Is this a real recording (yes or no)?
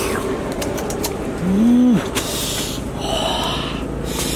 yes